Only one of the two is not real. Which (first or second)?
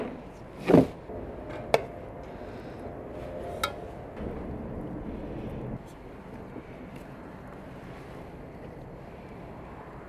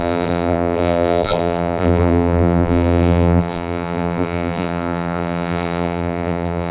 second